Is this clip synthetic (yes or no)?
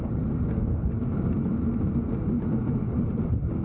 no